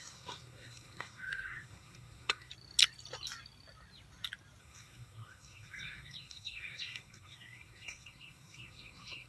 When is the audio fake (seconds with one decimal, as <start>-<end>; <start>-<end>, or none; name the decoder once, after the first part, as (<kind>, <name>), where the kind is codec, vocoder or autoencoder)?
0.0-2.5 (codec, SNAC); 4.6-9.3